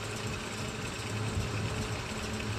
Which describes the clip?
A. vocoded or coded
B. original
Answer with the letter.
B